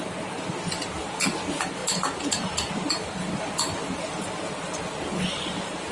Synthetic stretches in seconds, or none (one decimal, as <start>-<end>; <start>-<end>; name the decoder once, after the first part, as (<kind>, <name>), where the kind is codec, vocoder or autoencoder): none